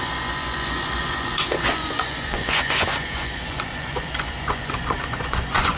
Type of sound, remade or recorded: remade